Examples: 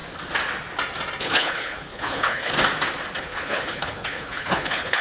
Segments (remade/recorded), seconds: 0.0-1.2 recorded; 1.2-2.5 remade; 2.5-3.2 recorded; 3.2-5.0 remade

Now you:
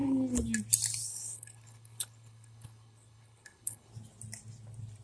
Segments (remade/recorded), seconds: 0.0-1.1 recorded; 1.1-3.9 remade; 3.9-5.0 recorded

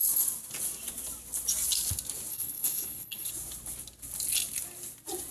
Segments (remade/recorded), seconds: 0.0-2.3 recorded; 2.3-3.3 remade; 3.3-5.3 recorded

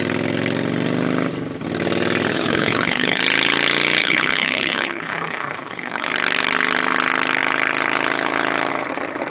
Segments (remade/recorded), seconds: 0.0-2.3 recorded; 2.3-3.2 remade; 3.2-4.0 recorded; 4.0-6.1 remade; 6.1-9.3 recorded

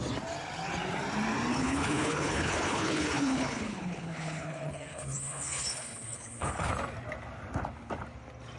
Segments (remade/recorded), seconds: 0.0-1.5 recorded; 1.5-6.7 remade; 6.7-8.6 recorded

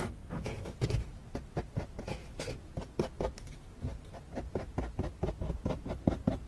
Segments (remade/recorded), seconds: 0.0-6.5 recorded

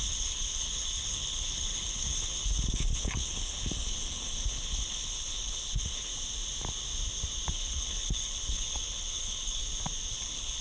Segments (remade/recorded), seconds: 0.0-6.1 remade; 6.1-7.5 recorded; 7.5-9.6 remade; 9.6-10.1 recorded; 10.1-10.6 remade